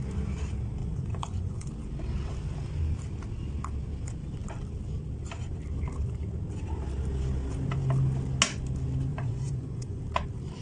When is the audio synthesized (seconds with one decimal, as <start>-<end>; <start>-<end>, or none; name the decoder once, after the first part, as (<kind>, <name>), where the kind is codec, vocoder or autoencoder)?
0.8-1.7 (vocoder, Vocos); 9.1-10.0